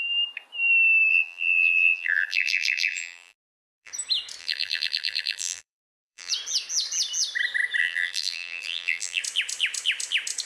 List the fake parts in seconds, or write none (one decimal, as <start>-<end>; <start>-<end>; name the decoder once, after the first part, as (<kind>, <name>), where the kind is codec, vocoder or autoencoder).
1.1-3.9 (vocoder, BigVGAN v2); 4.4-6.3; 7.8-9.2